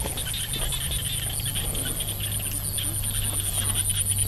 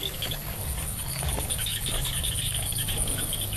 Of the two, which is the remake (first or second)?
second